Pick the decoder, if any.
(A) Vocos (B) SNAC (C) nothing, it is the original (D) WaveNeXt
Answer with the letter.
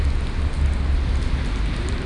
C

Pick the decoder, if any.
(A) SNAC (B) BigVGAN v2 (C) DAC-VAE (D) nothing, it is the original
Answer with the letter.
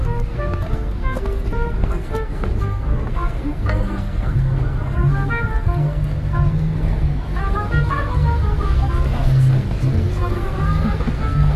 A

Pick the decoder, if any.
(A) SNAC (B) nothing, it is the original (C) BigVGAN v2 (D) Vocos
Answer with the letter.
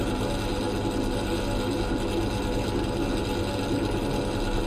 B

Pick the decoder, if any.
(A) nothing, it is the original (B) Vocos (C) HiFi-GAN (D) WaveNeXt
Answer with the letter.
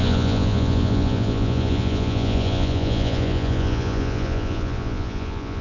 B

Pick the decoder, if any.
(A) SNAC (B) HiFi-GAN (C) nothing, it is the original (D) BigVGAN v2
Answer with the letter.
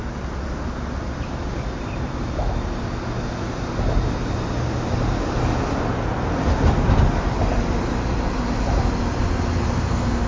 C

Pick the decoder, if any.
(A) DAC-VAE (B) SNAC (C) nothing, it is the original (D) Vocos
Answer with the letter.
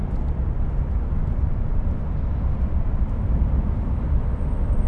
C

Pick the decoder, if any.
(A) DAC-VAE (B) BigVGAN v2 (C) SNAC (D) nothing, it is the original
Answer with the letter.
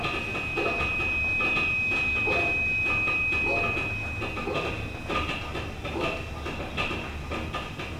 D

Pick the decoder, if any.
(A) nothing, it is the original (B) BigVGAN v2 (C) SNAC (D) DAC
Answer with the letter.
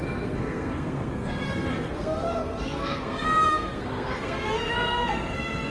C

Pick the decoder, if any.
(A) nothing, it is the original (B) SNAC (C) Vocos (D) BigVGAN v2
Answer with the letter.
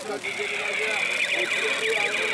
A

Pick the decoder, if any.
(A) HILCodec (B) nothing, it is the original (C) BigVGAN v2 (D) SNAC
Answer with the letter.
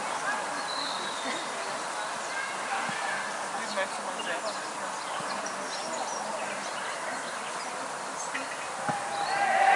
B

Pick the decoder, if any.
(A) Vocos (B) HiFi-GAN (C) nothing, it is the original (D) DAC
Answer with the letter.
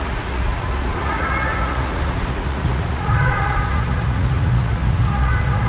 A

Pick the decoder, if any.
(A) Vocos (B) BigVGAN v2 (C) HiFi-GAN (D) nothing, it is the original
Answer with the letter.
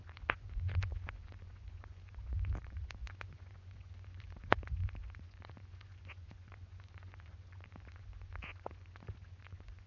A